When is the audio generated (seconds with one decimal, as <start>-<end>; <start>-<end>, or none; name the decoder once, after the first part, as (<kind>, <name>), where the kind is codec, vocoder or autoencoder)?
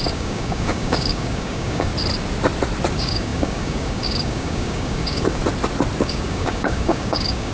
0.0-1.9 (codec, DAC); 2.9-5.4; 6.0-7.5